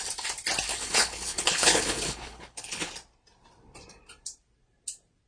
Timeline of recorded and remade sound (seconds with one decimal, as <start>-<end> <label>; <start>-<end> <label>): 0.0-0.7 recorded; 0.7-2.9 remade; 2.9-5.3 recorded